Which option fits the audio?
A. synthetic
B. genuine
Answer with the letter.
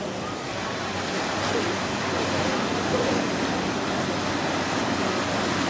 B